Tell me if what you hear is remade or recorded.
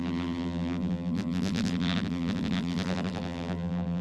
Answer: remade